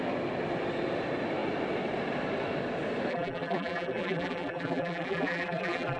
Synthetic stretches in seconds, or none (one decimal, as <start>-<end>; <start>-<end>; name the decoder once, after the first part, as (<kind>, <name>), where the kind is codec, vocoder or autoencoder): 3.1-6.0 (vocoder, BigVGAN v2)